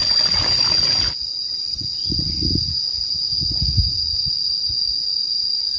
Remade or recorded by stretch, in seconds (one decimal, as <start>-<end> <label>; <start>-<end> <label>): 0.0-5.8 recorded